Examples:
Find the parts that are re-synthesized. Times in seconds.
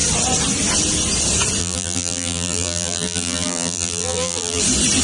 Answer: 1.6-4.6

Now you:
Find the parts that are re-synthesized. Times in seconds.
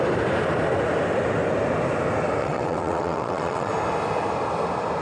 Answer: 2.4-3.7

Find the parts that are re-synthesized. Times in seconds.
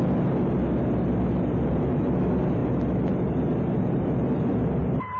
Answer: none